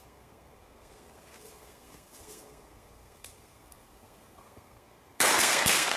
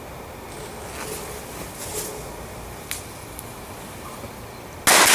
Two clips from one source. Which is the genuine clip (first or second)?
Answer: second